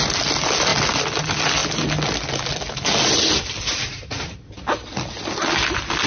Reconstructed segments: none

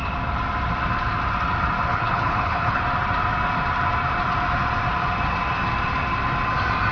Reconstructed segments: 1.9-2.8 (codec, HILCodec)

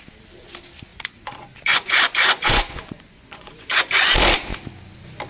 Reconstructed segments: 0.9-4.1 (vocoder, Vocos)

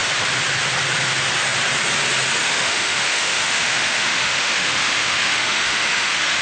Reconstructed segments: 2.4-6.4 (autoencoder, DAC-VAE)

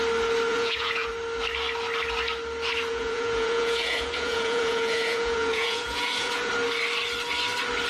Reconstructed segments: 0.5-1.1 (vocoder, Vocos); 2.9-6.5

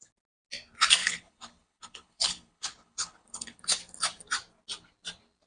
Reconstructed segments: 1.0-3.6 (codec, HILCodec)